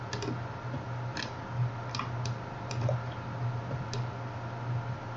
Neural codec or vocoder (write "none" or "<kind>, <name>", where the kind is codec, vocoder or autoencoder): none